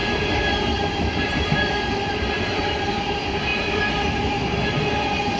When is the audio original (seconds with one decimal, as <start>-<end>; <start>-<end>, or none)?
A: 0.0-5.4